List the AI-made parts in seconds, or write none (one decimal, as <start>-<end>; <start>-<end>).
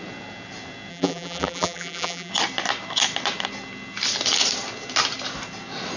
0.9-2.3